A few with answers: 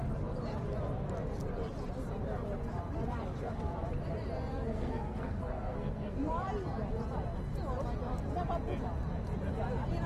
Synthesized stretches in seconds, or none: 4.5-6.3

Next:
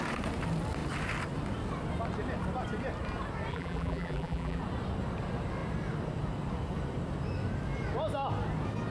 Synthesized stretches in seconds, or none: 3.5-4.6

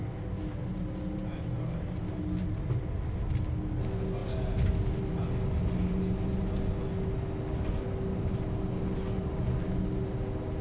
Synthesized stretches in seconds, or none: none

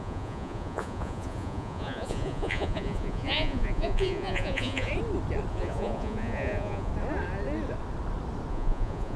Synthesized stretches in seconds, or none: 0.0-4.9; 5.5-6.9; 8.5-9.2

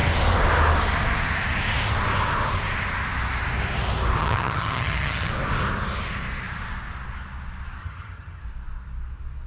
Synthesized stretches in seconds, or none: 4.2-5.3; 7.8-8.4

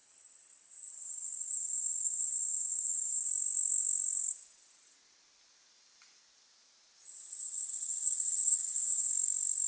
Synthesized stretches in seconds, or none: 0.0-3.3; 7.0-9.1

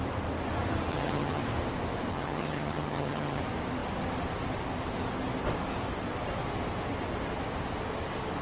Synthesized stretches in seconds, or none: 0.9-1.4; 2.1-3.4

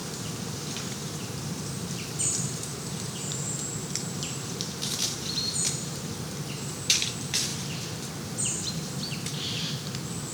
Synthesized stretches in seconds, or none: 0.5-7.5; 8.7-10.3